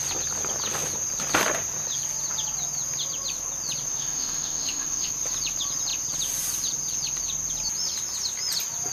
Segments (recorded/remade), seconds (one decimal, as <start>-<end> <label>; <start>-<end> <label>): 0.0-3.9 recorded; 3.9-5.1 remade; 5.1-8.9 recorded